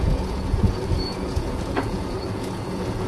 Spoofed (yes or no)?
yes